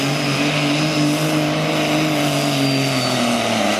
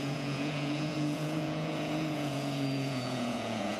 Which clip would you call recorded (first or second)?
first